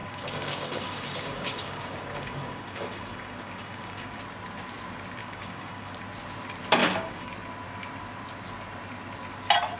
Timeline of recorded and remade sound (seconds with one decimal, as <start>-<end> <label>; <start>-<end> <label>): 0.0-4.2 remade; 4.2-5.2 recorded; 5.2-5.9 remade; 5.9-6.8 recorded; 6.8-7.3 remade; 7.3-9.8 recorded